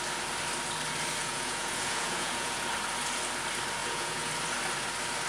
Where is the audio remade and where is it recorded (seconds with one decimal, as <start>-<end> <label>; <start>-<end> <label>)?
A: 0.0-1.2 recorded; 1.2-2.7 remade; 2.7-3.8 recorded; 3.8-4.3 remade; 4.3-5.3 recorded